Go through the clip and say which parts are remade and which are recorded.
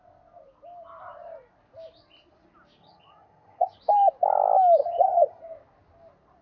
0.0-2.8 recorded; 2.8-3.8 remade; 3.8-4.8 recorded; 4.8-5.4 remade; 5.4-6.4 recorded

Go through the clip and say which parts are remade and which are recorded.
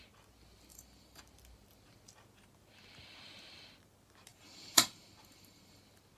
0.0-0.7 recorded; 0.7-1.2 remade; 1.2-4.3 recorded; 4.3-5.8 remade; 5.8-6.2 recorded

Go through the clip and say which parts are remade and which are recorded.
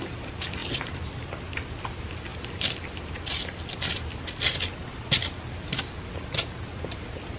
0.0-7.4 recorded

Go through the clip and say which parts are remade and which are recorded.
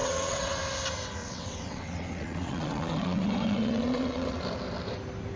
0.0-0.6 remade; 0.6-1.2 recorded; 1.2-4.4 remade; 4.4-5.4 recorded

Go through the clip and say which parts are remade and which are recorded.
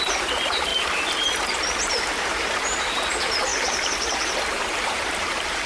0.0-0.7 remade; 0.7-1.8 recorded; 1.8-3.5 remade; 3.5-4.6 recorded; 4.6-5.7 remade